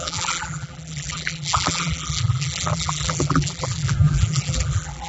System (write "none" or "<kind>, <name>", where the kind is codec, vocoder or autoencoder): vocoder, BigVGAN v2